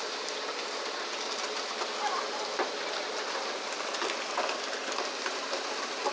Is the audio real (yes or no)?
yes